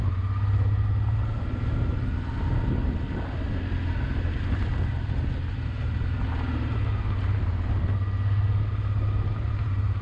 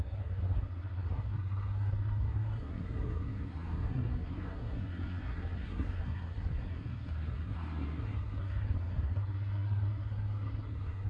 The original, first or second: first